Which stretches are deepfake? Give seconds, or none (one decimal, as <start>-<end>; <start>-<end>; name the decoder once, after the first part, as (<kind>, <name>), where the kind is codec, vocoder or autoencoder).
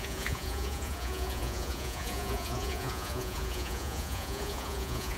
0.0-5.2 (vocoder, Vocos)